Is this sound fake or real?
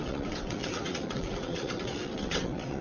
fake